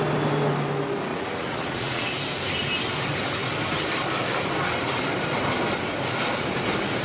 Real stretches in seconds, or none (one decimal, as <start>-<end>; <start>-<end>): 0.0-1.1; 2.1-7.0